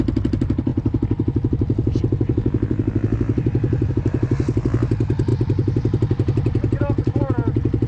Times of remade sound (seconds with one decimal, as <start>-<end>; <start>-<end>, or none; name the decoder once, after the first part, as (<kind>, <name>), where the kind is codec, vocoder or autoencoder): none